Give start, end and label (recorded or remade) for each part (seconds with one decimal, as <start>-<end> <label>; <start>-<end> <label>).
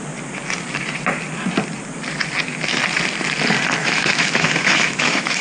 0.0-3.8 recorded; 3.8-5.4 remade